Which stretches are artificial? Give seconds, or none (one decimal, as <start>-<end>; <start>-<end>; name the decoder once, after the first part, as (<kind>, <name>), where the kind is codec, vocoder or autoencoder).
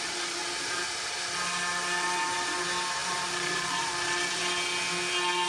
0.4-1.1 (vocoder, BigVGAN v2); 3.0-4.4